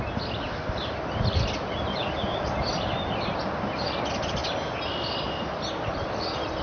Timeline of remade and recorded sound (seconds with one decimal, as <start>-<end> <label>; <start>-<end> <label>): 0.0-6.6 recorded